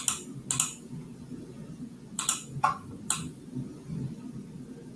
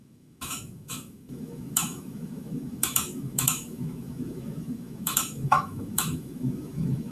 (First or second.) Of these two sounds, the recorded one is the first